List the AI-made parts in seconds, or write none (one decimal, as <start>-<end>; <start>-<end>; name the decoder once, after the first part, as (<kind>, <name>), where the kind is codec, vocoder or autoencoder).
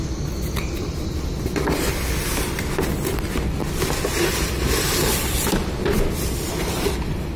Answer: none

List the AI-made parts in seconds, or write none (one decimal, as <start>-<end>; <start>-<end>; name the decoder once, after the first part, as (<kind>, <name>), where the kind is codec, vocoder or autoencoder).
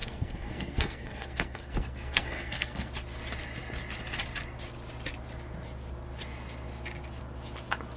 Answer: 0.0-2.9 (codec, SNAC)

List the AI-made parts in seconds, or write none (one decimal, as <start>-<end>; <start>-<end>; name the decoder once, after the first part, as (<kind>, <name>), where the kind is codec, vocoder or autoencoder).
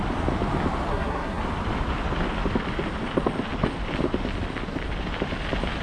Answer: 0.9-1.4 (codec, SNAC)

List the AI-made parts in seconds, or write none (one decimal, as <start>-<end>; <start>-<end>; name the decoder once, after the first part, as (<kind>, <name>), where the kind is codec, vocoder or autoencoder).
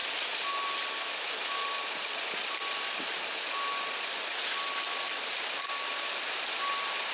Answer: none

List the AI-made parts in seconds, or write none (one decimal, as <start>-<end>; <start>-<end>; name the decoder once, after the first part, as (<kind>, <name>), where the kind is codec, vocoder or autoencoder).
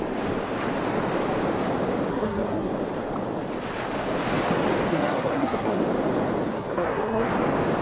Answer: 2.1-2.7 (codec, SNAC); 4.9-5.8; 6.5-7.3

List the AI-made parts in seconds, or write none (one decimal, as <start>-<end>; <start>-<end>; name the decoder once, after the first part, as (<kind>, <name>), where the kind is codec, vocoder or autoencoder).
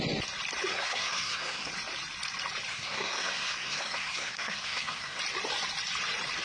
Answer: 0.7-1.7 (codec, SNAC); 2.7-5.2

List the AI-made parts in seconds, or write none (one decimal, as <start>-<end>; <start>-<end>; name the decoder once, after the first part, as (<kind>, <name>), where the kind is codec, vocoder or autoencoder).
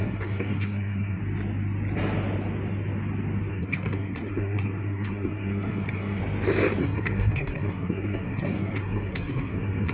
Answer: 0.0-1.2 (codec, SNAC); 3.5-6.2; 6.8-9.9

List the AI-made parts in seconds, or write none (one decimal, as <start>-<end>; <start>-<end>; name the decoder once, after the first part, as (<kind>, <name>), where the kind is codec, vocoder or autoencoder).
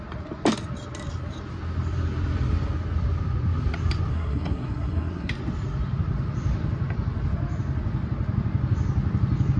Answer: 4.1-5.3 (codec, SNAC)